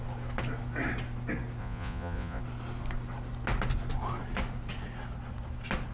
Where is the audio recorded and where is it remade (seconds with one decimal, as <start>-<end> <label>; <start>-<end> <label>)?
0.0-1.6 recorded; 1.6-2.4 remade; 2.4-5.9 recorded